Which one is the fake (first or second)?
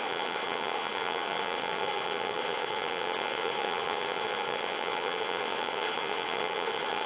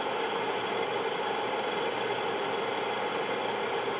first